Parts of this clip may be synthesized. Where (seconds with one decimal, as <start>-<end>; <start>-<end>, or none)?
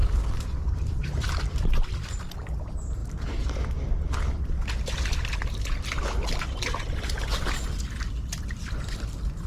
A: 0.0-1.4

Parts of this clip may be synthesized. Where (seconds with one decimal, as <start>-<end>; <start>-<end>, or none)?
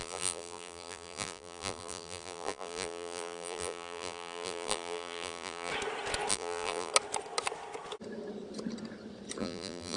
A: 0.0-5.7; 6.3-6.9; 9.4-10.0